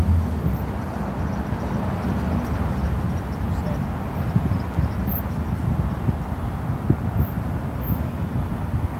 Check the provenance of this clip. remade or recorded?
recorded